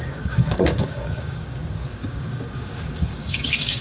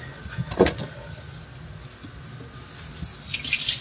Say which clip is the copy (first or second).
first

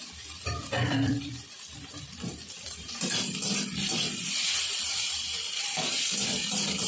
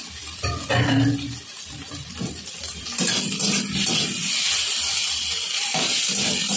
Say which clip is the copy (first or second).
first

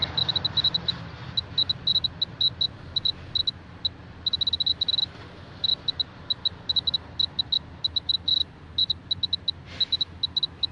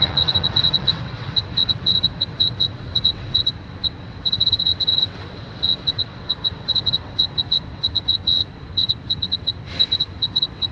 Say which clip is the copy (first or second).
second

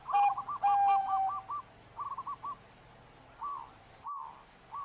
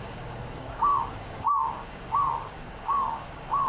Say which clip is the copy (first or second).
second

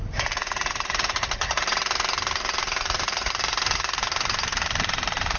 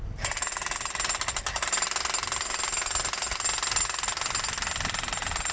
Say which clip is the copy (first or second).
first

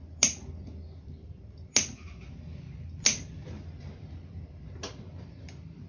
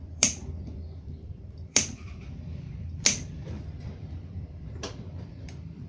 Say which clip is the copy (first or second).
second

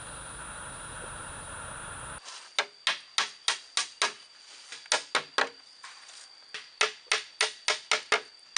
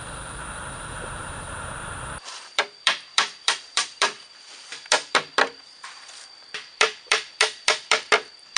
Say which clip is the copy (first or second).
second